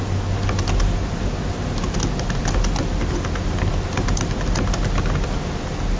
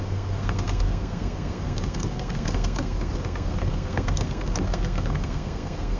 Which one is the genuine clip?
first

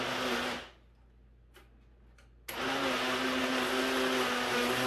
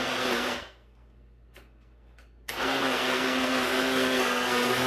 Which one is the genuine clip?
first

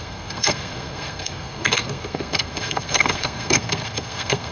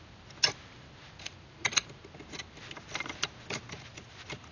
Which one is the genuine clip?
second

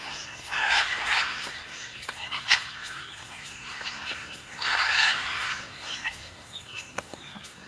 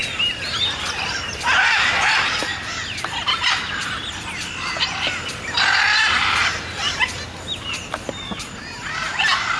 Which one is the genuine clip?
second